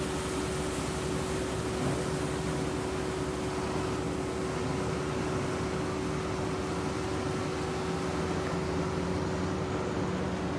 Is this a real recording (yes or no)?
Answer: yes